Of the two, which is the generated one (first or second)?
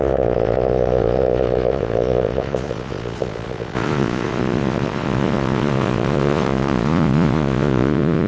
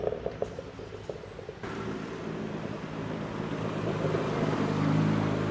first